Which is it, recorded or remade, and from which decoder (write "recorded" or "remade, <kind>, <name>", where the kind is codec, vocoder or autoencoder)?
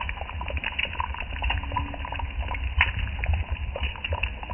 recorded